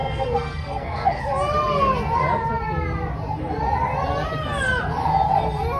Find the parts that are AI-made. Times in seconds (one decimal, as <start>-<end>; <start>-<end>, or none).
0.0-1.2